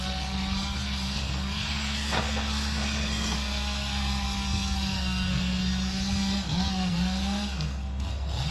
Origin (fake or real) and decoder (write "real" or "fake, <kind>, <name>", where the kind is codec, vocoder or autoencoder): fake, codec, SNAC